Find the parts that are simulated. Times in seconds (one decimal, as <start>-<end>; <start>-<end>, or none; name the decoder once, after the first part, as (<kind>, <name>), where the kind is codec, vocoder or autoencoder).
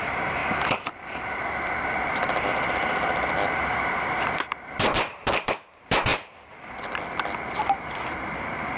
0.0-0.4 (vocoder, BigVGAN v2); 3.9-6.1; 7.6-8.8